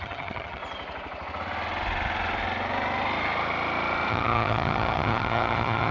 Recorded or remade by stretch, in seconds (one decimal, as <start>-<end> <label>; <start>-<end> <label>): 0.0-0.6 remade; 0.6-4.1 recorded; 4.1-5.9 remade